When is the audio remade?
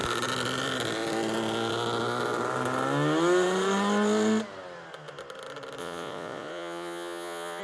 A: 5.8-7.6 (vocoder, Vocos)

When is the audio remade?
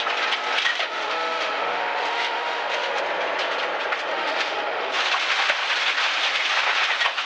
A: 0.7-3.0 (autoencoder, DAC-VAE); 4.1-4.9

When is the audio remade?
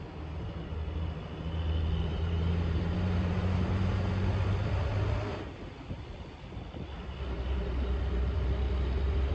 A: 2.1-4.0 (vocoder, BigVGAN v2)